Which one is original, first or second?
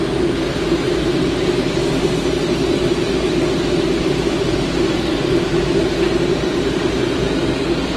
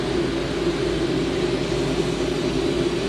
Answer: second